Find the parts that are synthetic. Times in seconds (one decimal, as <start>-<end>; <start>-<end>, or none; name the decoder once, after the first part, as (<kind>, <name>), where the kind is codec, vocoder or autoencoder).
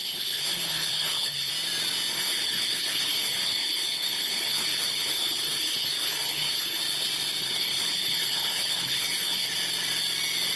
0.0-1.5 (codec, HILCodec); 2.1-6.8; 7.4-9.5